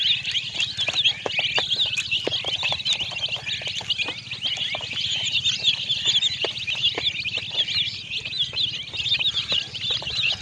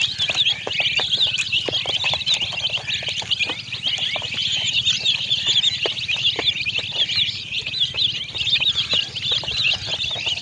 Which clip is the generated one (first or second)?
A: second